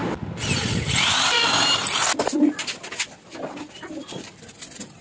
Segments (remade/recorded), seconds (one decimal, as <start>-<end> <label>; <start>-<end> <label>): 0.0-5.0 recorded